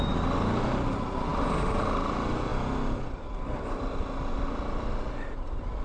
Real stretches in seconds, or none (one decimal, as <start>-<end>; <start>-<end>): 0.0-5.8